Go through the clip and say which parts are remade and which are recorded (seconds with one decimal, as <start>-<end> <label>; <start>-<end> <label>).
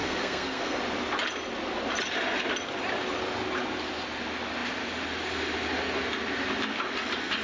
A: 0.0-0.8 remade; 0.8-7.4 recorded